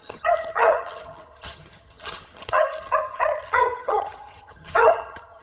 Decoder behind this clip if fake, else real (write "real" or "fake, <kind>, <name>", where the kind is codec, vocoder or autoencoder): fake, vocoder, HiFi-GAN